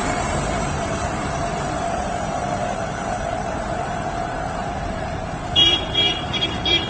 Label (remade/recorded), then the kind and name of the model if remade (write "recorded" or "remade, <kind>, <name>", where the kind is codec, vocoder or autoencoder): remade, vocoder, BigVGAN v2